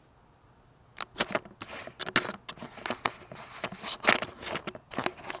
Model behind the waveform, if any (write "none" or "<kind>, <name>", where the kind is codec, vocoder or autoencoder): none